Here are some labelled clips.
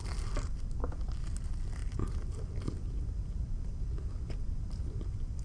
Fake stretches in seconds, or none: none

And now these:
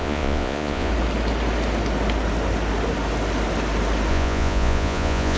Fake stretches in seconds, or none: 0.0-0.9 (vocoder, Vocos); 4.1-5.4

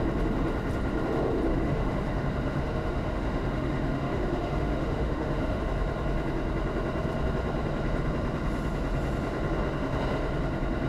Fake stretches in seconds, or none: 1.5-5.6 (autoencoder, DAC-VAE)

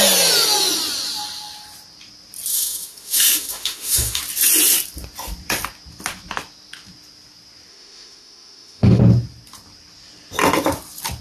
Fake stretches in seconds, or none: 2.5-4.2 (autoencoder, DAC-VAE); 7.7-9.0